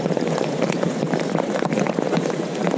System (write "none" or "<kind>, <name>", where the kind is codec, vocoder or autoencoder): vocoder, Vocos